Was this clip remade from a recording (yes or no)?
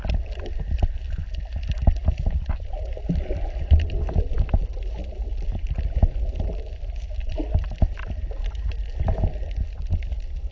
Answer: no